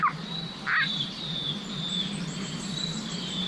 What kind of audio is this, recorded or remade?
remade